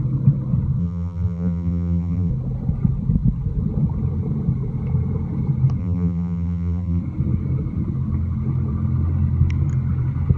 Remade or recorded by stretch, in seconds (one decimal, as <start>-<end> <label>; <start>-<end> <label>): 0.0-0.8 recorded; 0.8-2.3 remade; 2.3-5.8 recorded; 5.8-7.0 remade; 7.0-10.4 recorded